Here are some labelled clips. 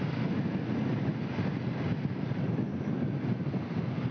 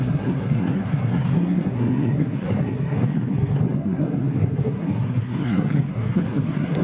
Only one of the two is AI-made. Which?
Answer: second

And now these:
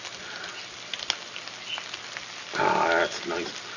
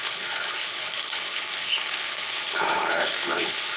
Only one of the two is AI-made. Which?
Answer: second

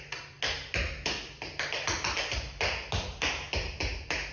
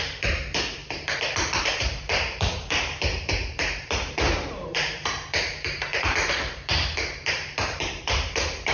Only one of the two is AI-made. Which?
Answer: second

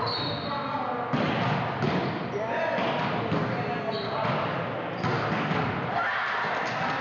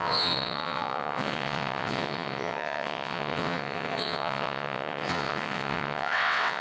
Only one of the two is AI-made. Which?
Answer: second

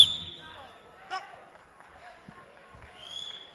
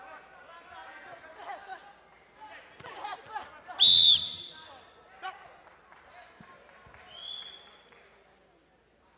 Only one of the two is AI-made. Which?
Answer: first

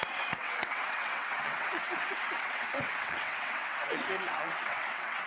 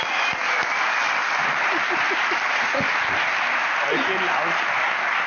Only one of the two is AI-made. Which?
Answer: first